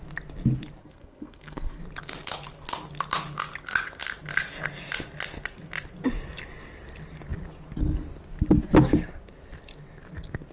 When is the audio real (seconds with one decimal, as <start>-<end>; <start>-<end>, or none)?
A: 0.0-0.8; 1.8-10.5